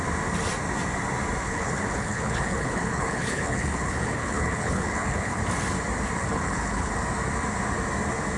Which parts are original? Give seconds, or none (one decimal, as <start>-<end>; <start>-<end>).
0.0-1.4; 5.4-6.2; 6.9-8.4